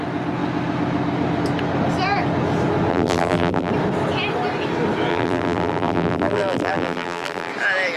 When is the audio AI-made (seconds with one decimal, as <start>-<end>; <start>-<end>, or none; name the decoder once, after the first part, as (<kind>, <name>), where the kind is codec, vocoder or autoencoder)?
2.9-3.7 (vocoder, BigVGAN v2); 5.1-7.5